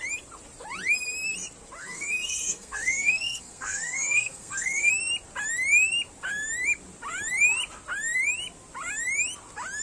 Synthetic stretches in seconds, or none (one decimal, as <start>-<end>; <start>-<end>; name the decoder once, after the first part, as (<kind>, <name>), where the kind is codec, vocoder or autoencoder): 1.8-4.9 (codec, SNAC)